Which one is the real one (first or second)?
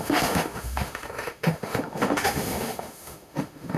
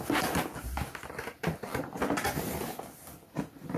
second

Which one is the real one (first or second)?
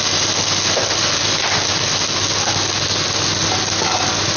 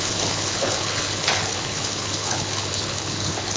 first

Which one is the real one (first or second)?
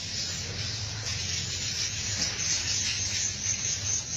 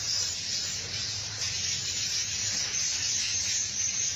first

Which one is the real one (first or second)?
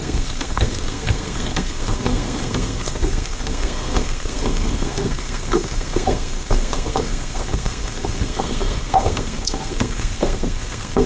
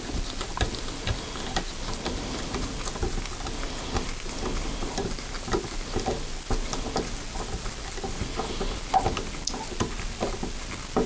second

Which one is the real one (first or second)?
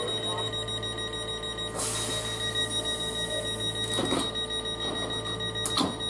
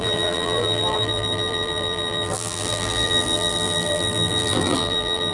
first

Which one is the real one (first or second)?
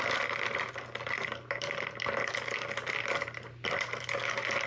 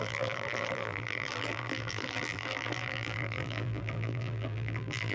first